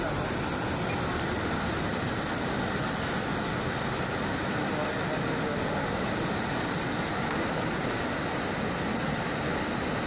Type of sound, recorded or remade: recorded